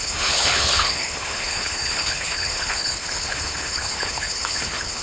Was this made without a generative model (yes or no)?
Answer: no